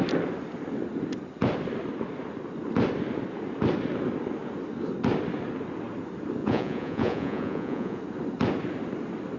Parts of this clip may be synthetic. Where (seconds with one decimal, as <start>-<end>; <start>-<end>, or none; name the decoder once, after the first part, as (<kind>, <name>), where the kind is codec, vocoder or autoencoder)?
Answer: 6.4-8.0 (vocoder, Vocos)